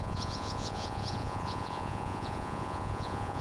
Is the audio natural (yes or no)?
no